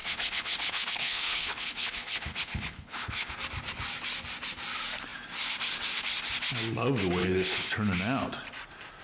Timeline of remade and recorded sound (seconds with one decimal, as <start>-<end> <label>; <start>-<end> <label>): 0.0-3.3 remade; 3.3-7.2 recorded; 7.2-7.7 remade; 7.7-9.0 recorded